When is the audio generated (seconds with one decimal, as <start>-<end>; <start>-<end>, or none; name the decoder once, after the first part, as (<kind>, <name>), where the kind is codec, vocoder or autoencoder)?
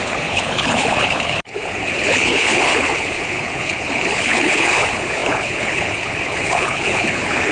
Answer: 0.0-7.5 (codec, HILCodec)